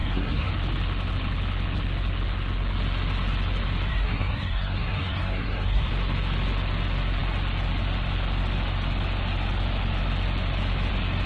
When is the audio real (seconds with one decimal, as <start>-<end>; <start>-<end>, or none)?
0.5-3.9; 5.9-11.3